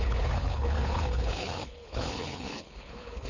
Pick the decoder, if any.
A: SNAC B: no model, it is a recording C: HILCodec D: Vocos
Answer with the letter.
C